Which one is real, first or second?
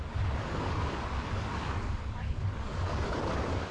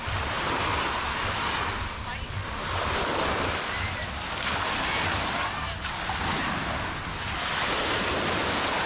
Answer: second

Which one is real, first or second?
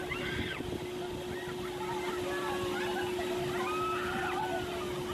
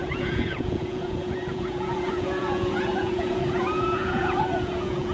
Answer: first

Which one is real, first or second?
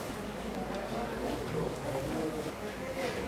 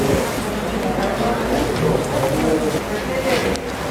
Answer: second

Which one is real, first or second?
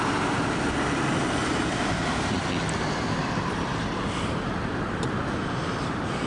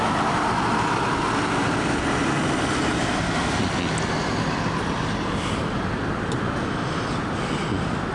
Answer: second